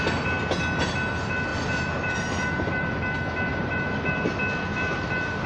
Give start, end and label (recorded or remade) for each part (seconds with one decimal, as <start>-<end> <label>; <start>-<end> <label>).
0.0-1.5 recorded; 1.5-2.9 remade; 2.9-3.5 recorded; 3.5-4.2 remade; 4.2-4.7 recorded; 4.7-5.5 remade